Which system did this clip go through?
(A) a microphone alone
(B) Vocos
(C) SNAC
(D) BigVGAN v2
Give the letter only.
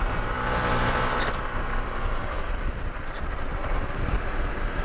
D